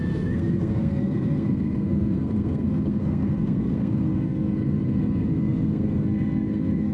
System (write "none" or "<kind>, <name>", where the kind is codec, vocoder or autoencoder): codec, SNAC